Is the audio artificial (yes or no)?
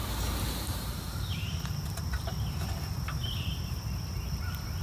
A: yes